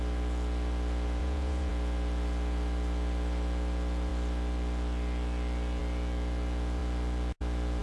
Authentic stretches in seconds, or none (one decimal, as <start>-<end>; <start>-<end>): 0.0-1.2; 1.7-7.8